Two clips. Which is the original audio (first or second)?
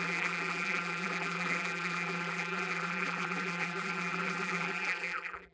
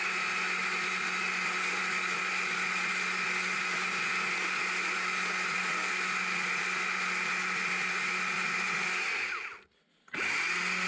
second